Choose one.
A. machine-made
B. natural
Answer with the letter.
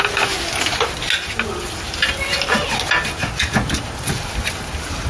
B